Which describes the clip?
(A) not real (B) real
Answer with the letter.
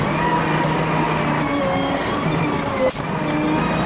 B